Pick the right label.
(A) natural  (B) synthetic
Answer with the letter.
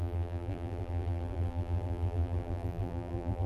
B